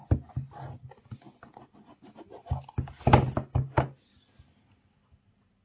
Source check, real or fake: real